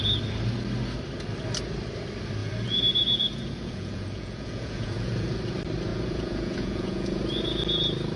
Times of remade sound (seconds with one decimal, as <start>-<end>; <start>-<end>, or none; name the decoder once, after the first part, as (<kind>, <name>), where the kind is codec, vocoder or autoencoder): 2.4-5.4 (vocoder, Vocos); 5.9-7.2